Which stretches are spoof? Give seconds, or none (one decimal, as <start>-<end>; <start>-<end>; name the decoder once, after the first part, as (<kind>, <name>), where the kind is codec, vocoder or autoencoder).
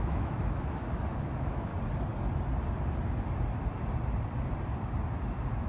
0.0-1.7 (autoencoder, DAC-VAE); 5.1-5.7